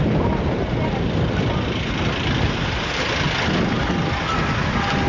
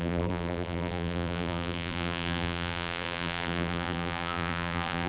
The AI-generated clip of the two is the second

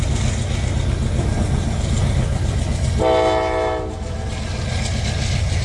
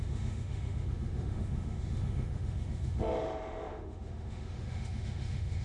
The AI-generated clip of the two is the second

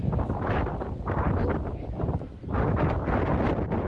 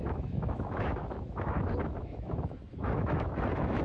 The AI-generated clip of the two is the second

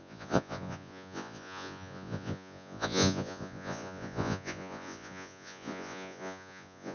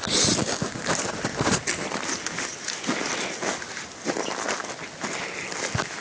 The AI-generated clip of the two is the first